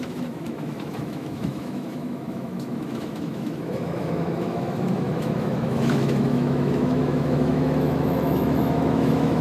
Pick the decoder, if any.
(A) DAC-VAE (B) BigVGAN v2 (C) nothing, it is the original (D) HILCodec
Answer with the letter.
A